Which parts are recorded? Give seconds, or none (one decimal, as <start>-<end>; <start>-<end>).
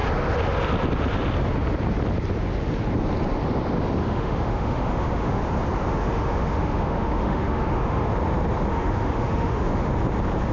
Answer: 0.0-4.0; 5.4-5.9; 8.1-8.7; 9.9-10.5